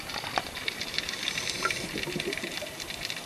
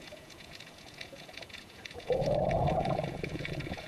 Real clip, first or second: first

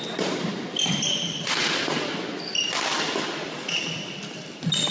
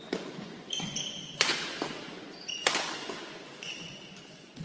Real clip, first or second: first